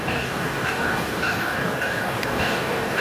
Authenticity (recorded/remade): remade